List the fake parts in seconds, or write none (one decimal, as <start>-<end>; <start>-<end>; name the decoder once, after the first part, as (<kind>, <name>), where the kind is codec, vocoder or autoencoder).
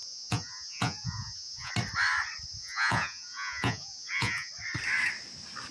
0.0-1.7 (vocoder, Vocos); 2.6-4.5